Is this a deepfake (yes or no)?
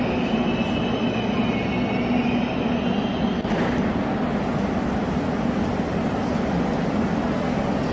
no